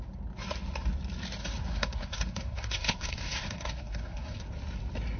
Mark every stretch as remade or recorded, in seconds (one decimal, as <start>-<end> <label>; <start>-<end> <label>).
0.0-1.4 recorded; 1.4-4.5 remade; 4.5-5.2 recorded